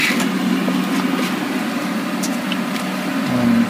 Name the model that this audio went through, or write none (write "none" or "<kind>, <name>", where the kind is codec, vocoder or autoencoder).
none